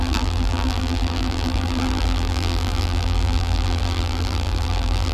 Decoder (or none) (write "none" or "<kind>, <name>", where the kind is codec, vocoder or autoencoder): vocoder, BigVGAN v2